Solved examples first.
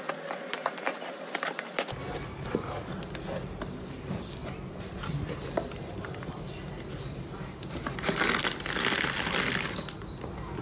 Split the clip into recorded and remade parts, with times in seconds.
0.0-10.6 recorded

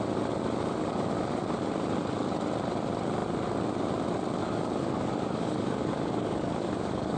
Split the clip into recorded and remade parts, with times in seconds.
0.0-4.4 recorded; 4.4-7.2 remade

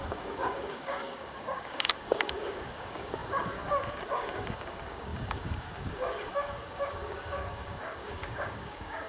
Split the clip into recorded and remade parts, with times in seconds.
0.0-9.1 remade